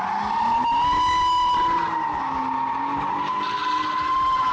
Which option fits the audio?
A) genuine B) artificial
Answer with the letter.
A